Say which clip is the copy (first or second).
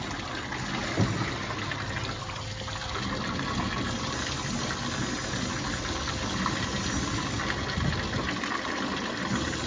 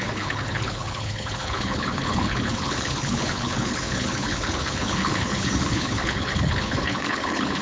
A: second